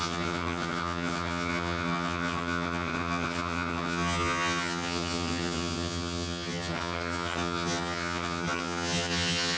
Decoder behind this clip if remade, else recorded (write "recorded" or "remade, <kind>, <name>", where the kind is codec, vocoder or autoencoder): remade, vocoder, HiFi-GAN